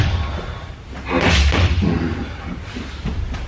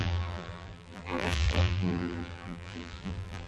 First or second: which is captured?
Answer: first